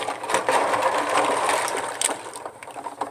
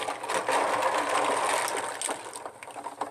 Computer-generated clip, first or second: first